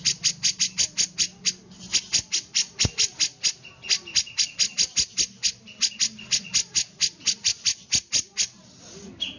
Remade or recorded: recorded